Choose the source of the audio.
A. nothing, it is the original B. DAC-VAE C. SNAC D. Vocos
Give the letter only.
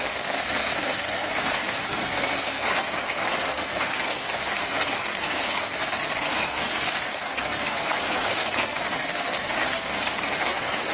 C